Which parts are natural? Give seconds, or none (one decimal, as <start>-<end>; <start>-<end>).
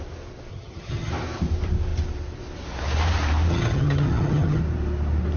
0.0-0.5; 1.1-3.5; 4.6-5.4